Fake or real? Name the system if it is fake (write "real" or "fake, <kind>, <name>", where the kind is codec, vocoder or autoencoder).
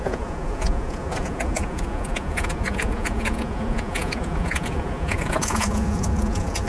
fake, vocoder, Vocos